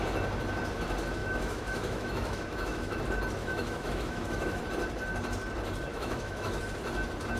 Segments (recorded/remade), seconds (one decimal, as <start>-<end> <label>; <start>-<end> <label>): 0.0-1.2 recorded; 1.2-3.0 remade; 3.0-3.4 recorded; 3.4-4.6 remade; 4.6-5.9 recorded; 5.9-6.6 remade; 6.6-7.4 recorded